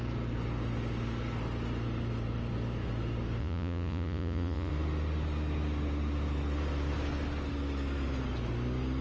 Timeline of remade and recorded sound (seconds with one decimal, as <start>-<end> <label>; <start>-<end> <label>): 0.0-3.4 recorded; 3.4-4.7 remade; 4.7-9.0 recorded